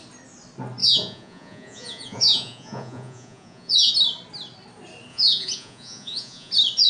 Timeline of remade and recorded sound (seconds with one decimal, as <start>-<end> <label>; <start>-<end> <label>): 0.0-0.8 recorded; 0.8-3.9 remade; 3.9-5.1 recorded; 5.1-6.5 remade; 6.5-6.9 recorded